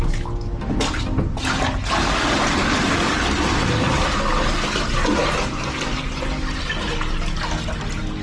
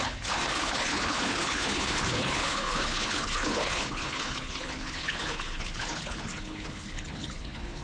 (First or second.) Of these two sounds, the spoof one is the second